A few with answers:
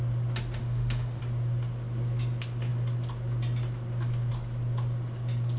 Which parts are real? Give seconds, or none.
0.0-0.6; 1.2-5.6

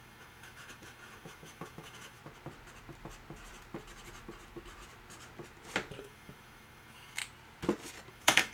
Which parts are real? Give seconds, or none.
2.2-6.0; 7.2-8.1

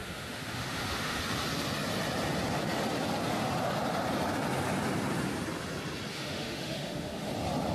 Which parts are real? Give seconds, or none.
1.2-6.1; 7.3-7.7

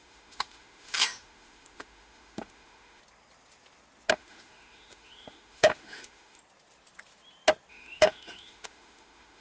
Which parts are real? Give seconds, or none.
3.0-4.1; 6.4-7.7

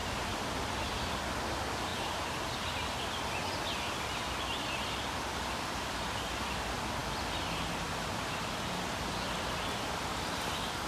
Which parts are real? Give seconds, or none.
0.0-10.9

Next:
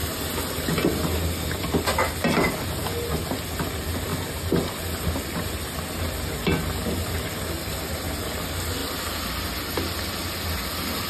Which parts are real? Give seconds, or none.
0.0-11.1